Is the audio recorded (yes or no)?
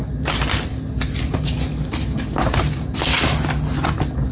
yes